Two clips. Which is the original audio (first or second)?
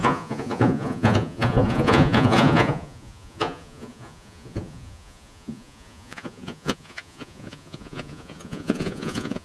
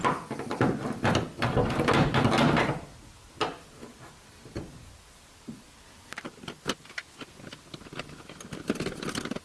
second